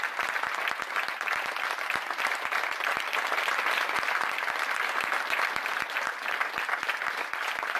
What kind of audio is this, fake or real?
real